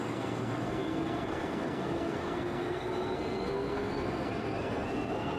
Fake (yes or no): yes